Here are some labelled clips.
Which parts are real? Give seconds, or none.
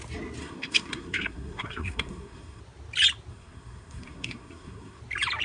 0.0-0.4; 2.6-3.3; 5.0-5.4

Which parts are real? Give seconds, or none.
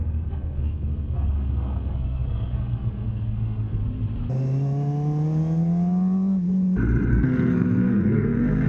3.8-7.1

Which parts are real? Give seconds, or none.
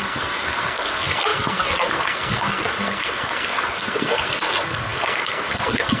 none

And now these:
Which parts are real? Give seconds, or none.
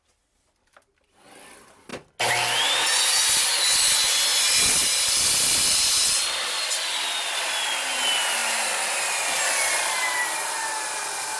0.0-11.4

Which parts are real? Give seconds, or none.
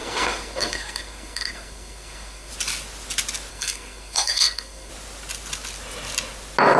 2.5-3.5; 4.9-6.8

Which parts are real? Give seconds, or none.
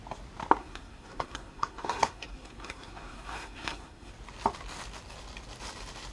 0.0-0.6; 4.1-6.1